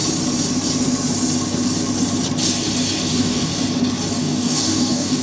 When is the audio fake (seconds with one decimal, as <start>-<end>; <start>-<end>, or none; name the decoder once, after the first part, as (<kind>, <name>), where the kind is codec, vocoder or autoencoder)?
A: 3.1-3.5 (codec, DAC); 4.2-5.2